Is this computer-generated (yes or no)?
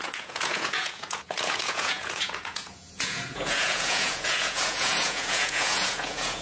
yes